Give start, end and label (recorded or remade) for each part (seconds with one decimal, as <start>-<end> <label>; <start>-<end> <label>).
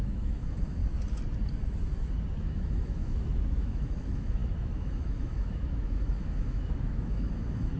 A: 0.0-0.8 remade; 0.8-2.4 recorded; 2.4-7.8 remade